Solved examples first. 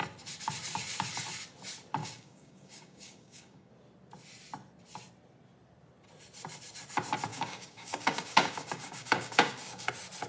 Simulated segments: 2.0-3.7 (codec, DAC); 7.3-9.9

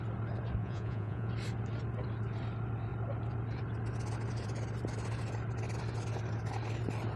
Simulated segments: 0.6-1.3 (vocoder, Vocos)

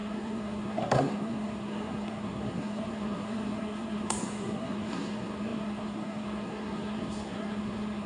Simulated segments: 0.0-8.1 (codec, SNAC)

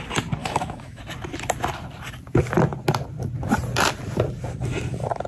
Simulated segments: 0.4-1.0 (autoencoder, DAC-VAE)